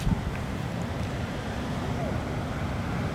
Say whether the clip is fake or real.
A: real